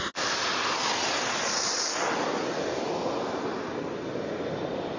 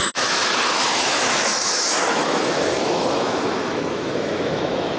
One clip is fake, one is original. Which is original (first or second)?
first